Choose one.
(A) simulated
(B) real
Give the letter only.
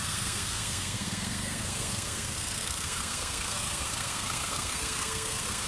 A